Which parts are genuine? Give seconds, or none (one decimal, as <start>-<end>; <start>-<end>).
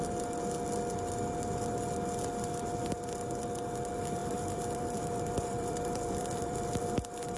0.0-4.2; 6.8-7.4